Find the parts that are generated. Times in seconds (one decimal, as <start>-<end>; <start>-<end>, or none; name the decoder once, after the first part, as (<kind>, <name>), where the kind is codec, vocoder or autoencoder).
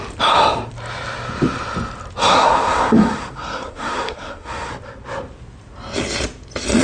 2.2-4.7 (codec, SNAC)